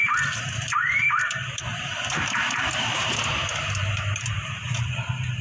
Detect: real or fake fake